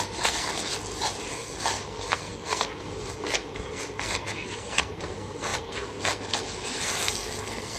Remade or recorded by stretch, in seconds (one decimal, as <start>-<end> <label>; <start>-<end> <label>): 0.0-0.7 remade; 0.7-1.3 recorded; 1.3-7.8 remade